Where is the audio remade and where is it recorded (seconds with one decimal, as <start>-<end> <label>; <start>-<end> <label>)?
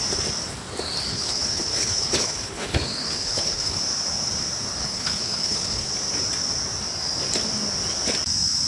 0.0-1.1 recorded; 1.1-3.8 remade; 3.8-4.8 recorded; 4.8-5.9 remade; 5.9-8.7 recorded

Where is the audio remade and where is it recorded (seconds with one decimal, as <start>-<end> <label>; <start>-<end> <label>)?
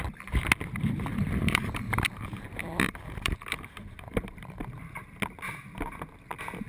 0.0-1.1 recorded; 1.1-4.8 remade; 4.8-6.7 recorded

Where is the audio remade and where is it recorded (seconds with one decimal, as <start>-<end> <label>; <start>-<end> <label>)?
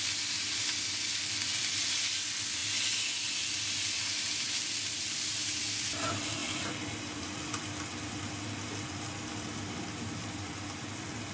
0.0-11.3 recorded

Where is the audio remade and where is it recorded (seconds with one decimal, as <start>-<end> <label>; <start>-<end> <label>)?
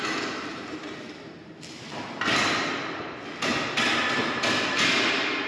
0.0-0.5 recorded; 0.5-1.3 remade; 1.3-5.5 recorded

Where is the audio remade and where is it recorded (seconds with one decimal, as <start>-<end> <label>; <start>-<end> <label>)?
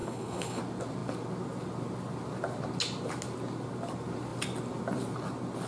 0.0-0.6 remade; 0.6-5.7 recorded